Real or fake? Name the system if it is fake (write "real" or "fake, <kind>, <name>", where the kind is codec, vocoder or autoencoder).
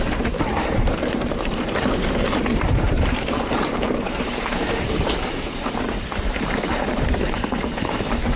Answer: fake, vocoder, BigVGAN v2